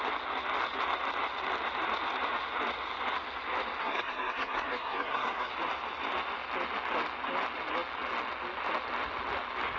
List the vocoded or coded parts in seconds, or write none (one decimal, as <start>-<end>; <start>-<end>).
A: 3.8-5.5